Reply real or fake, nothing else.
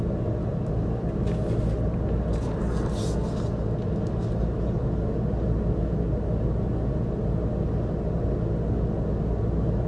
real